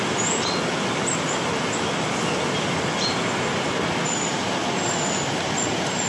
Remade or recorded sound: recorded